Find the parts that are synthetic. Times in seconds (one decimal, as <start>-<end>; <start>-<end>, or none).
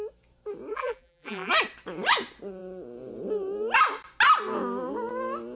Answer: 0.7-1.5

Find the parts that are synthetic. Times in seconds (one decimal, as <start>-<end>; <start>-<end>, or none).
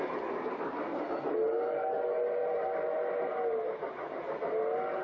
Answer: none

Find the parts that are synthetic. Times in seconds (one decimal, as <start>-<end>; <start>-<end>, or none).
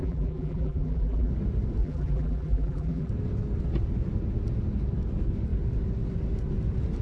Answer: 0.0-1.3; 1.8-3.1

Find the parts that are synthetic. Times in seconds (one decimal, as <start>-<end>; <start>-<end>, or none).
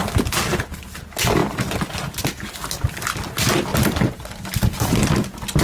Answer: 3.7-4.5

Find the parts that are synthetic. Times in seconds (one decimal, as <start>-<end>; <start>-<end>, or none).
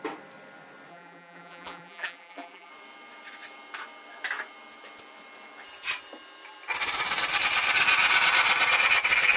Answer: 0.9-2.7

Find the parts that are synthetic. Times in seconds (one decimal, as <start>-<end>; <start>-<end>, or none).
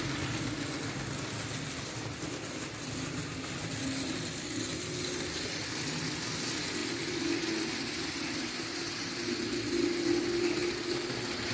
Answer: 6.8-9.3